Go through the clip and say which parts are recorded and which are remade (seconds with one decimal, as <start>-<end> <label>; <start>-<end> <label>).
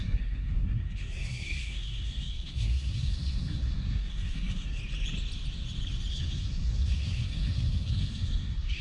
0.0-4.8 remade; 4.8-6.1 recorded; 6.1-8.8 remade